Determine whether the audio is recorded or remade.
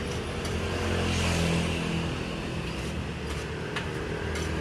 recorded